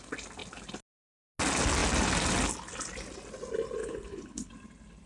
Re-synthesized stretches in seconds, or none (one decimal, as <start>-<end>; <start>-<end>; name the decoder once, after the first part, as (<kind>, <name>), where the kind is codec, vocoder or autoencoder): 3.8-4.5 (codec, HILCodec)